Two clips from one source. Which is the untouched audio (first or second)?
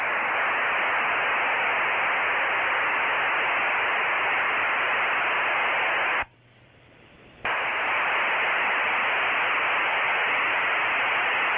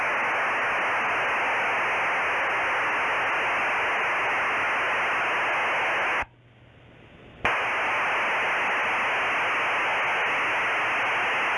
second